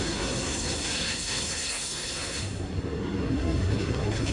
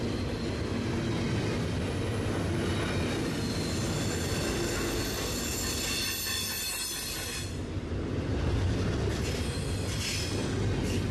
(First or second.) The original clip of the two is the second